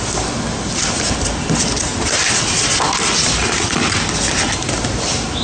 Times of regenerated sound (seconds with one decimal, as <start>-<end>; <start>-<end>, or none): none